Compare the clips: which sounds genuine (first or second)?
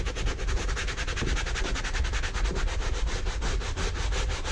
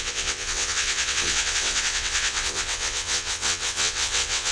first